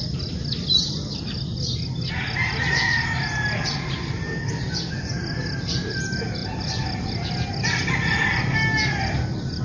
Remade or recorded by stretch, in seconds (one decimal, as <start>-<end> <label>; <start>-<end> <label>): 0.0-9.6 recorded

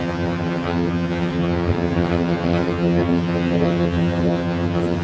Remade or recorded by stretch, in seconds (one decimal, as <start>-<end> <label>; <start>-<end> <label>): 0.0-5.0 remade